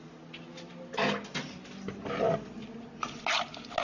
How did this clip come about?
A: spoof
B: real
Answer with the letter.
B